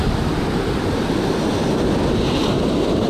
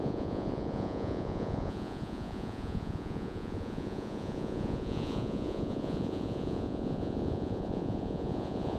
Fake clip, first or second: second